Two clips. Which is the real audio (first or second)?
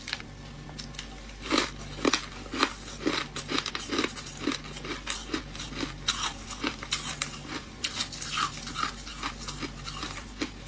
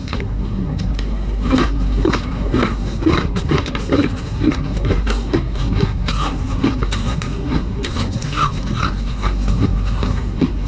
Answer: first